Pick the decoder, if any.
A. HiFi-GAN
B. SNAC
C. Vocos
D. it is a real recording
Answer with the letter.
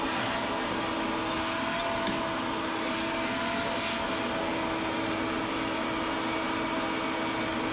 D